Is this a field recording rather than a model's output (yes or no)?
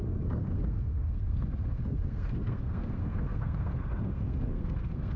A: no